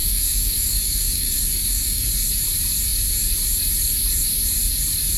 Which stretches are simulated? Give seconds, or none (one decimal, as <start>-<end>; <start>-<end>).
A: 0.0-2.1